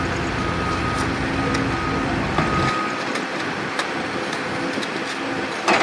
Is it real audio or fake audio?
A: real